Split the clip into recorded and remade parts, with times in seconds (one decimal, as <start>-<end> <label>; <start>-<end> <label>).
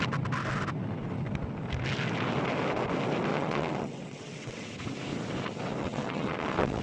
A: 0.0-3.3 recorded; 3.3-4.7 remade; 4.7-5.8 recorded; 5.8-6.8 remade